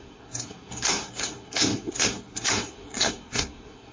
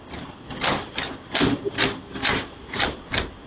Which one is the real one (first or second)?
second